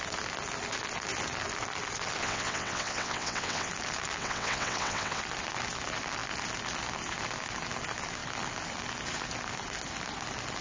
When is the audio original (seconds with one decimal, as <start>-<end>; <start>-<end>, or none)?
0.0-2.2; 3.7-4.2; 5.2-10.6